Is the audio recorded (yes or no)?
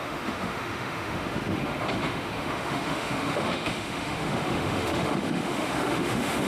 no